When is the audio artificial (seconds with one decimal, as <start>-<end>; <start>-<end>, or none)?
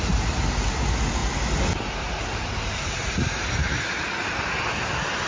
none